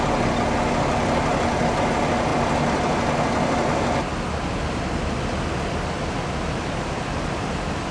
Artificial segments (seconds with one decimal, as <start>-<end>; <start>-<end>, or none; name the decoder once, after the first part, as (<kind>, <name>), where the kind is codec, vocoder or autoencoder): none

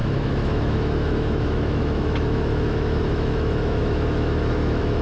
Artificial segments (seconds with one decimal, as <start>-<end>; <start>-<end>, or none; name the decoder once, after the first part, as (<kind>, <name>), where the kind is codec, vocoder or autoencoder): 0.0-5.0 (autoencoder, DAC-VAE)